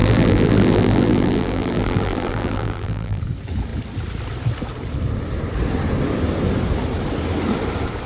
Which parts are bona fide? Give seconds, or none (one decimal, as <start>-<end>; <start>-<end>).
3.2-8.1